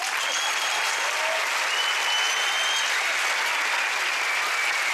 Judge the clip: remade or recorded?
recorded